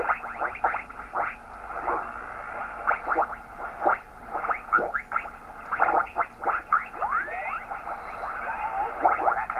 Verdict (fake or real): real